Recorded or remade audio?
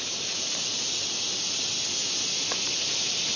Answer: recorded